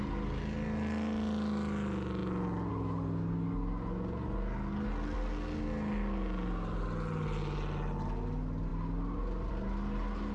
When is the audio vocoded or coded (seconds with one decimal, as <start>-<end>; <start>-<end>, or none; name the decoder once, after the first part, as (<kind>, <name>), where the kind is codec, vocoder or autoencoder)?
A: none

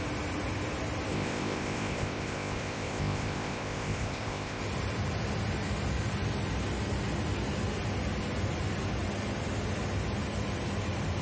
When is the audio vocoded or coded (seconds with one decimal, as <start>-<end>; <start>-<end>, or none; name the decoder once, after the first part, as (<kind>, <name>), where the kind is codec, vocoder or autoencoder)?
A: 1.1-4.6 (codec, ZipCodec)

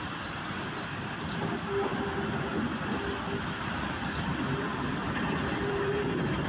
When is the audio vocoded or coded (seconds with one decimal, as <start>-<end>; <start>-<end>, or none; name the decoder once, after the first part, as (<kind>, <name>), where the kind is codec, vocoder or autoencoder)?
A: 0.0-2.5 (vocoder, BigVGAN v2); 3.7-6.5